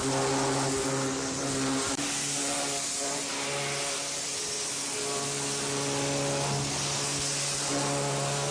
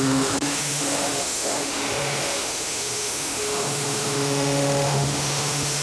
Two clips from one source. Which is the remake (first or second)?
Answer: second